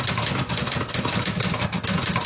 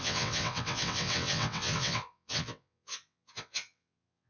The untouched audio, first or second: first